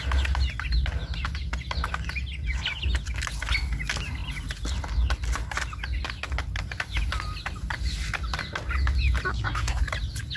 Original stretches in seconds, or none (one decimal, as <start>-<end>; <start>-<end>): 0.0-9.3; 9.8-10.4